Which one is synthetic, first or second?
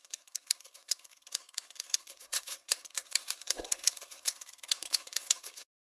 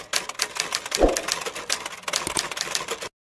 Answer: first